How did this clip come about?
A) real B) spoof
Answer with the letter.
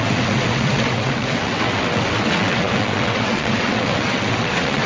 B